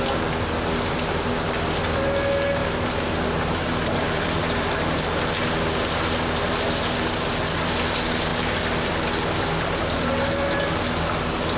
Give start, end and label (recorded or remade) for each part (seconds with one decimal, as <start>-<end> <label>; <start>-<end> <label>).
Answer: 0.0-2.6 recorded; 2.6-5.0 remade; 5.0-11.6 recorded